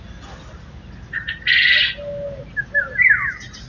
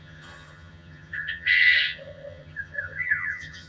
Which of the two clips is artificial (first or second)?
second